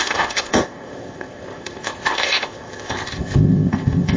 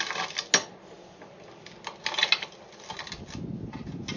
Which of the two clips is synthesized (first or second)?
first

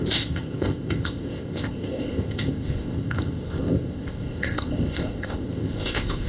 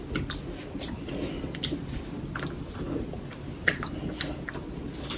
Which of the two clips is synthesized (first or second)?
first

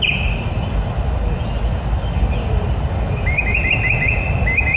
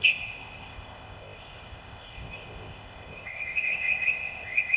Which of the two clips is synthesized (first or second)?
second